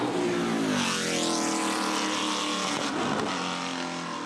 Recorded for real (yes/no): yes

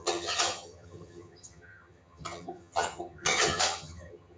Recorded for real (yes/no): no